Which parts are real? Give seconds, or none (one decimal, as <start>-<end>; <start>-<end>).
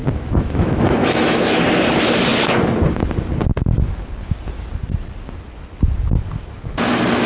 1.4-7.3